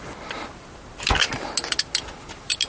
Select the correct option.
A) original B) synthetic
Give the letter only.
A